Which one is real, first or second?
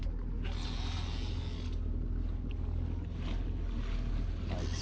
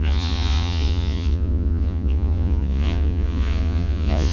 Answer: first